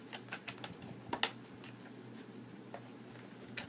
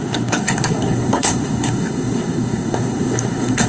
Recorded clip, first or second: first